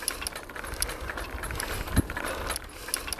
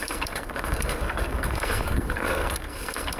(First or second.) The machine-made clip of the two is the second